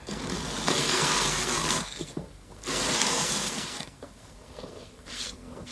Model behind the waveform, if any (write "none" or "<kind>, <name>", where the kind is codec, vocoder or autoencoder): codec, SNAC